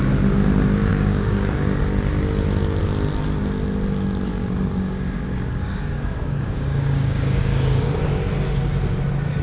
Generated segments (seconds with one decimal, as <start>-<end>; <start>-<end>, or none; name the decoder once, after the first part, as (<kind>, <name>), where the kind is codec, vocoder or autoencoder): 0.9-1.8 (codec, DAC); 4.3-8.3